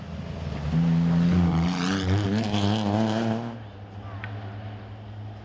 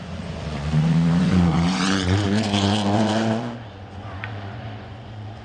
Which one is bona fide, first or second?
first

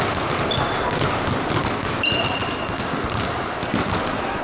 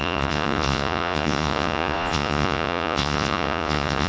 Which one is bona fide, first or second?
first